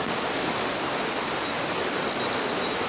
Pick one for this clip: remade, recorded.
recorded